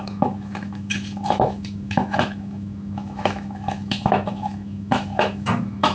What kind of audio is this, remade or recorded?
remade